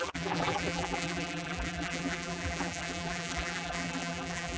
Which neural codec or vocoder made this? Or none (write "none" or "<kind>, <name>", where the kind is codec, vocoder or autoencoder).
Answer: vocoder, BigVGAN v2